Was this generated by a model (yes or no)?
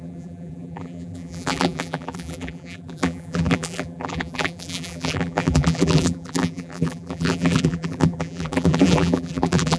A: yes